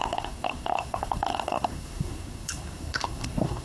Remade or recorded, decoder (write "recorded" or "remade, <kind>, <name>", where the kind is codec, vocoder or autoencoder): remade, codec, SNAC